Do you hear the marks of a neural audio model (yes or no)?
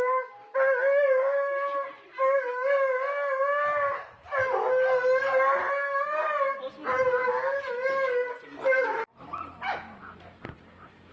no